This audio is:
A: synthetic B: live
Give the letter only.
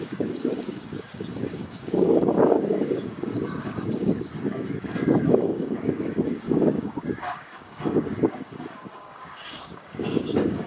A